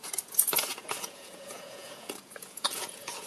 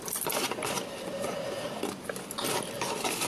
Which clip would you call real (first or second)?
second